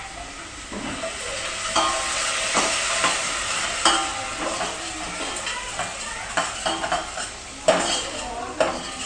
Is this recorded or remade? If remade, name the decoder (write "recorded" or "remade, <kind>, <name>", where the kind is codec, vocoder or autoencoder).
recorded